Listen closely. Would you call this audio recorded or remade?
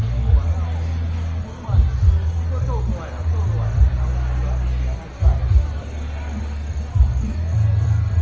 recorded